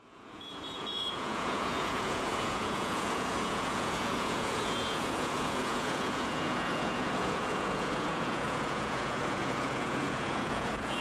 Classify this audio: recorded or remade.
remade